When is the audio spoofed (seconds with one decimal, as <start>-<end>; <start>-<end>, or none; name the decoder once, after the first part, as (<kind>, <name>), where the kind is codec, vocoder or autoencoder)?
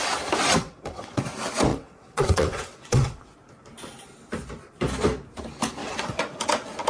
0.6-1.2 (vocoder, WaveNeXt); 1.7-3.2; 5.8-6.4